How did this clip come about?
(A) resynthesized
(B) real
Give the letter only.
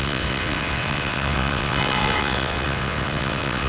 A